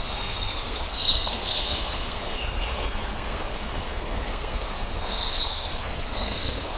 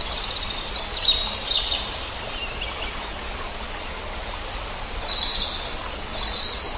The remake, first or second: first